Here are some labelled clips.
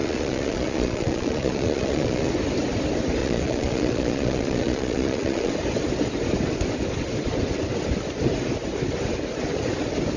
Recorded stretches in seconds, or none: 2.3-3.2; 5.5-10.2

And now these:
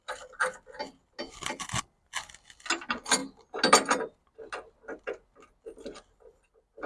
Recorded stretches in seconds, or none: 0.0-6.9